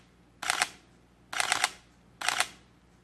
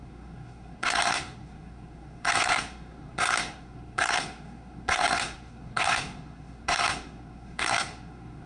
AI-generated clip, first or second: second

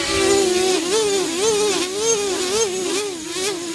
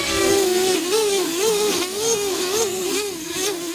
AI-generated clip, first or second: second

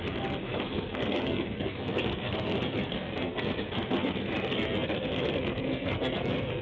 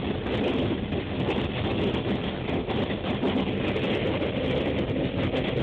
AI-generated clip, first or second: first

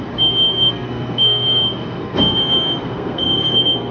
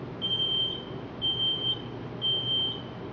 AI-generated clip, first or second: first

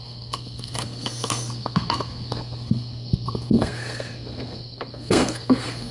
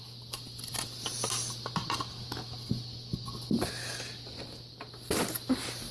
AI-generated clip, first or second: first